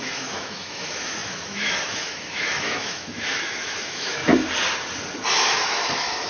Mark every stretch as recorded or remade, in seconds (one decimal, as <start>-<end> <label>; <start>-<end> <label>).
0.0-4.3 remade; 4.3-5.3 recorded; 5.3-6.3 remade